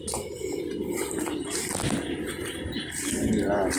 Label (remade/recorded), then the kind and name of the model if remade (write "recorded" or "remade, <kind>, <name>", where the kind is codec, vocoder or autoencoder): recorded